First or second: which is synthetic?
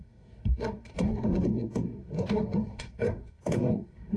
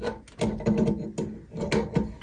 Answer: first